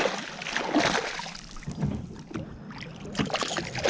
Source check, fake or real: real